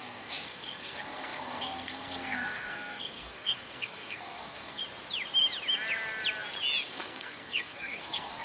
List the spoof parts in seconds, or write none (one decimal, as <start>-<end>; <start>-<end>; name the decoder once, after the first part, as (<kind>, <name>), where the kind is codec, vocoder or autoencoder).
0.0-4.8 (codec, SNAC); 6.9-8.4